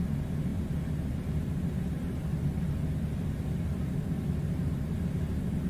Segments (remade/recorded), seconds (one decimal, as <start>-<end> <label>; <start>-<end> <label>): 0.0-5.7 recorded